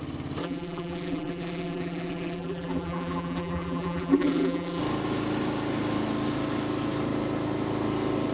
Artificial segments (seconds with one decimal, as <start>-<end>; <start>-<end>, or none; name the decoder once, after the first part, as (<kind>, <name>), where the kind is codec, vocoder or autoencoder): 0.4-4.8 (vocoder, BigVGAN v2)